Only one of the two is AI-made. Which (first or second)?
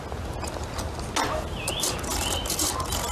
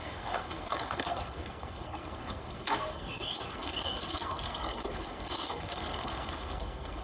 second